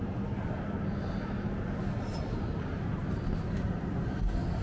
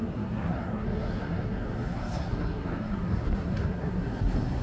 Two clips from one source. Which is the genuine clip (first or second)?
first